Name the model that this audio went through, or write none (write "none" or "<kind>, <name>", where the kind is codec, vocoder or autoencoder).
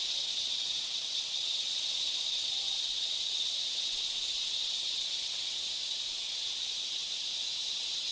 vocoder, WaveNeXt